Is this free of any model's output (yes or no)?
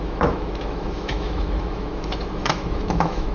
no